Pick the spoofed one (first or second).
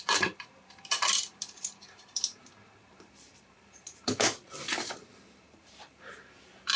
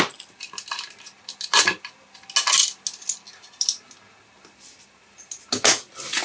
first